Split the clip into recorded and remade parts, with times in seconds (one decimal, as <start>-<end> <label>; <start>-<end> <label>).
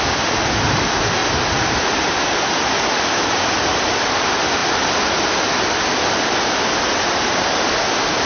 0.0-8.3 recorded